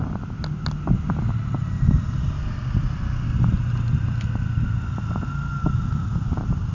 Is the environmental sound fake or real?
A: real